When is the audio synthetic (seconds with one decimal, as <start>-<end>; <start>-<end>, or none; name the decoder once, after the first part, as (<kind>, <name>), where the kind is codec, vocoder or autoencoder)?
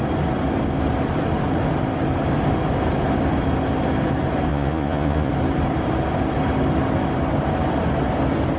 4.5-5.3 (vocoder, Vocos)